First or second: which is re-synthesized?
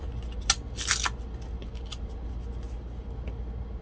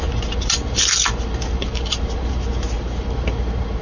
second